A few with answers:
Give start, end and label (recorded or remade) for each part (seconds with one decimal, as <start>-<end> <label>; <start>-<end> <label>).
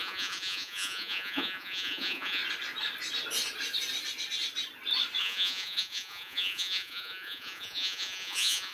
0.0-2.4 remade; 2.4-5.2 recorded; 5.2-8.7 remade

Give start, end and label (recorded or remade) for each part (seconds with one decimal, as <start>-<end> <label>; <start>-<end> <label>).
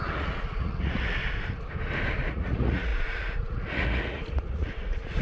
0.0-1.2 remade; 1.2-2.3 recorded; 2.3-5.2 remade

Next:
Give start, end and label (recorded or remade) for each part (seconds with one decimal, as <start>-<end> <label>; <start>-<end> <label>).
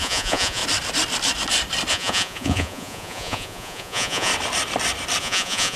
0.0-0.6 remade; 0.6-1.9 recorded; 1.9-4.3 remade; 4.3-5.2 recorded; 5.2-5.8 remade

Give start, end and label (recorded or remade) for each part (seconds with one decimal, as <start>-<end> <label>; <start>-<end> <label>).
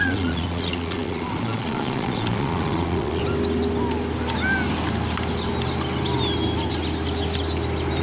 0.0-3.2 remade; 3.2-8.0 recorded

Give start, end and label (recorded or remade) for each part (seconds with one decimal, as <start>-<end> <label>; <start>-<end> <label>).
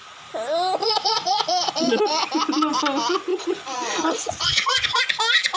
0.0-0.8 recorded; 0.8-2.3 remade; 2.3-3.3 recorded; 3.3-5.0 remade; 5.0-5.6 recorded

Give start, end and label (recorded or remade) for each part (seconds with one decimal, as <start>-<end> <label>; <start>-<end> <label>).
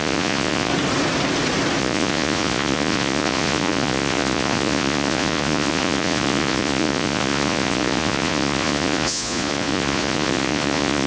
0.0-0.7 remade; 0.7-1.8 recorded; 1.8-11.1 remade